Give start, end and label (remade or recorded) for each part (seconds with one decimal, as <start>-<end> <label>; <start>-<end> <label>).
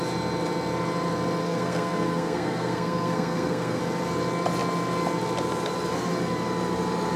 0.0-1.4 recorded; 1.4-3.8 remade; 3.8-7.2 recorded